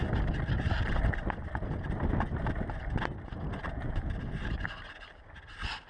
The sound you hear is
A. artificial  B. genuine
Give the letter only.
B